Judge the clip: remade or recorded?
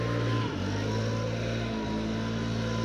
recorded